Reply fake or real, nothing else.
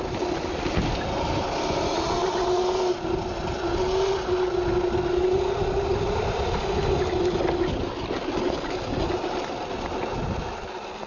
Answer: real